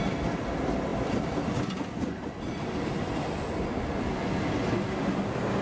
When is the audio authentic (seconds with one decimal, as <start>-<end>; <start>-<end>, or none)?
0.0-0.9; 4.3-5.6